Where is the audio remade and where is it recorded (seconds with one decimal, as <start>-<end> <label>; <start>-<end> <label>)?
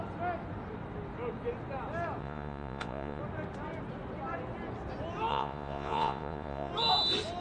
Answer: 0.0-2.2 recorded; 2.2-3.2 remade; 3.2-5.3 recorded; 5.3-6.7 remade; 6.7-7.4 recorded